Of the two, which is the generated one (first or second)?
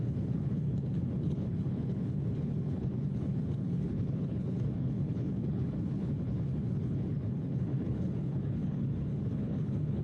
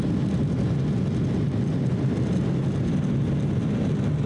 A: first